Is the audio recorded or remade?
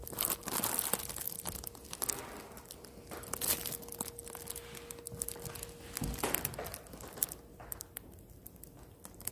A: recorded